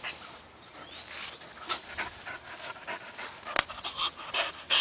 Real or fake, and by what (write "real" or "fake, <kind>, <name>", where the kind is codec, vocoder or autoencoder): real